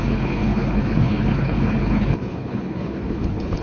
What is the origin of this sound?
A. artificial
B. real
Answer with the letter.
A